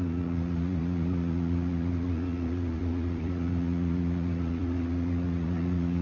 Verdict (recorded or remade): remade